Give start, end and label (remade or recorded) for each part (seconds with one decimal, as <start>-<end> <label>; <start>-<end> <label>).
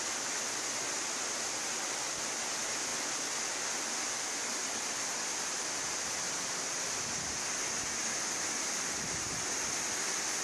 0.0-10.4 recorded